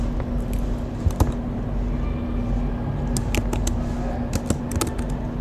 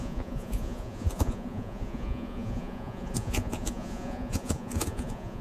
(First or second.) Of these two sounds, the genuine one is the first